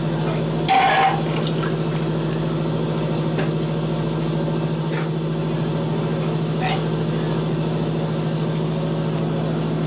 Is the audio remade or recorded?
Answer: recorded